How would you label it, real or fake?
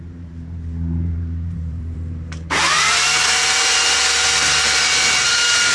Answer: fake